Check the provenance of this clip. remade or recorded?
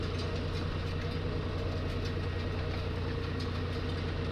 recorded